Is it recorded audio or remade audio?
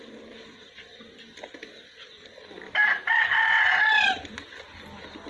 recorded